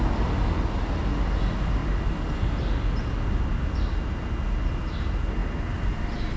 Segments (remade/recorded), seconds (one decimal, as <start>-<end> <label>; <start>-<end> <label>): 0.0-6.4 recorded